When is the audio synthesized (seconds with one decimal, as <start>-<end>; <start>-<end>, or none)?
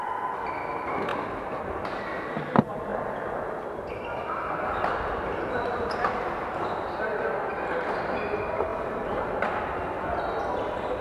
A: none